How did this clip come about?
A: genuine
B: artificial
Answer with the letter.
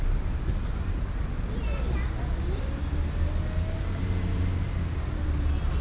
A